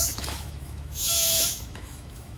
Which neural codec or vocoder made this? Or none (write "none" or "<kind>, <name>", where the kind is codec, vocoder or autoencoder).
autoencoder, DAC-VAE